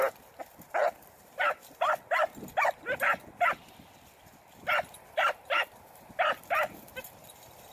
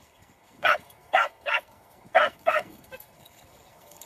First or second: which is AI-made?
second